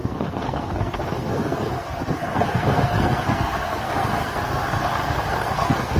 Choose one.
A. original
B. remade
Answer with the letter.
B